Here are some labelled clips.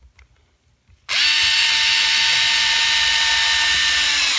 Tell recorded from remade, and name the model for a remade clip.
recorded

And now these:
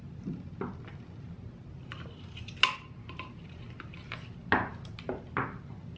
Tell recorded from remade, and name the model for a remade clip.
recorded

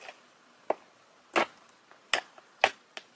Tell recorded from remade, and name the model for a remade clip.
recorded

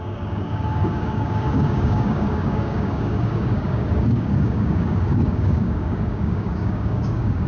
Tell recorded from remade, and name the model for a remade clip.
remade, codec, DAC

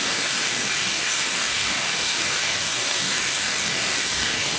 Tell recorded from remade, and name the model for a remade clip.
remade, codec, DAC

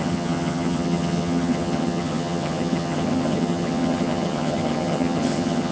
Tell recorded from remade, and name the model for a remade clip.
remade, vocoder, HiFi-GAN